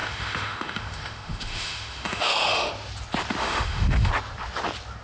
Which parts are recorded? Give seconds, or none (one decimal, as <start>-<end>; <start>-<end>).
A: 2.7-3.4; 4.1-5.0